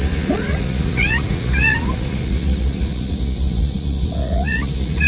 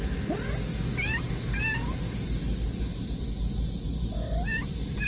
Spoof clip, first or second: first